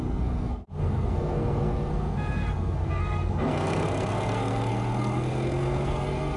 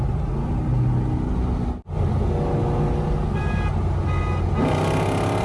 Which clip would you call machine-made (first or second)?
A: first